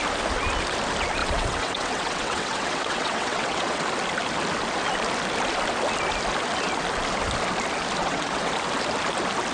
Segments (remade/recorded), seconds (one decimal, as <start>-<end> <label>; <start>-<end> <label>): 0.0-1.2 recorded; 1.2-3.8 remade; 3.8-8.0 recorded; 8.0-8.5 remade; 8.5-9.5 recorded